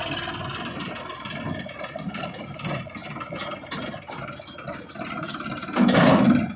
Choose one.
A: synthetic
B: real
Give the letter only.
B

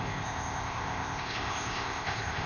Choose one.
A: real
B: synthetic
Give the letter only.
B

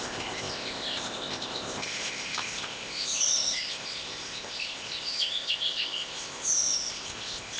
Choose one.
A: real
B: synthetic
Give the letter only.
B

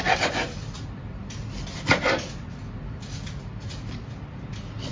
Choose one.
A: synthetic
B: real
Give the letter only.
B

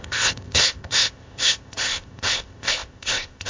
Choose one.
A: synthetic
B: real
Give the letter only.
A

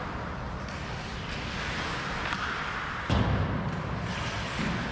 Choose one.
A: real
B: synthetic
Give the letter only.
A